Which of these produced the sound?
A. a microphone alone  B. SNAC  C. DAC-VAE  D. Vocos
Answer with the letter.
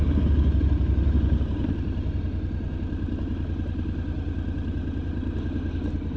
A